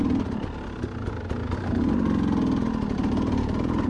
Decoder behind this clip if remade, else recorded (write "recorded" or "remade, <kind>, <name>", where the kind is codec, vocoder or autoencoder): recorded